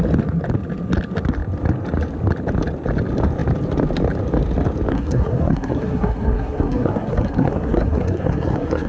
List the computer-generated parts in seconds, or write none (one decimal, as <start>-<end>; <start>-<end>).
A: 4.9-8.9